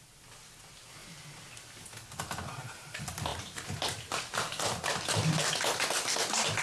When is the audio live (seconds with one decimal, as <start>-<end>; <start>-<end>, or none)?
0.0-3.3; 4.2-6.6